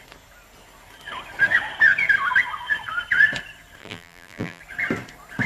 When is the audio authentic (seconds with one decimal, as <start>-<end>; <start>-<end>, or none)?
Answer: 0.0-3.8; 4.6-5.5